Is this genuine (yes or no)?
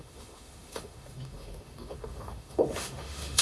no